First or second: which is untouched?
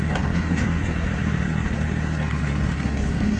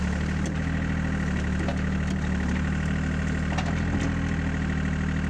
second